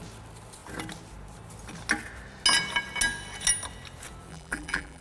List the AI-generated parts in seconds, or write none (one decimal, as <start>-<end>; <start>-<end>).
4.3-5.0